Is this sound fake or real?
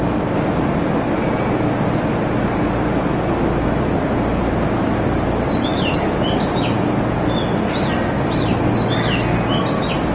real